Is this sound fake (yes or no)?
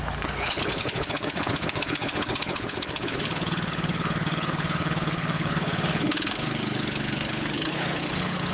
yes